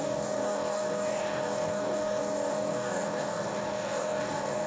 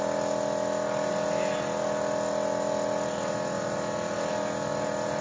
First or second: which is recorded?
second